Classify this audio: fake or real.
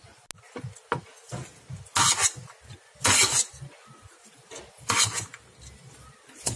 real